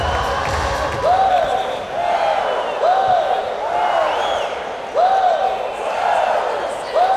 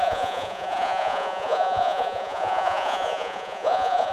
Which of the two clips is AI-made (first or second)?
second